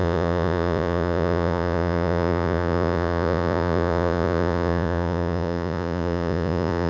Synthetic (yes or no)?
yes